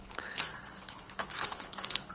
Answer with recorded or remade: remade